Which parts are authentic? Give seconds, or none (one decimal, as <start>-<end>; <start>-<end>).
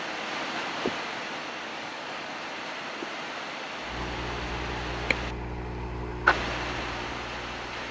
0.0-1.7; 2.4-7.9